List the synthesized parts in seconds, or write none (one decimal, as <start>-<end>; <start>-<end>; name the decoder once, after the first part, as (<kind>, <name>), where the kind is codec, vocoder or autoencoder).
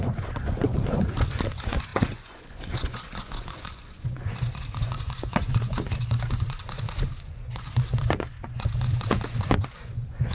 0.0-10.3 (vocoder, Vocos)